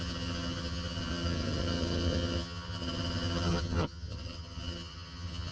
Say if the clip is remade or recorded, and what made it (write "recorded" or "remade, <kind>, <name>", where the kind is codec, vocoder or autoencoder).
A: remade, vocoder, HiFi-GAN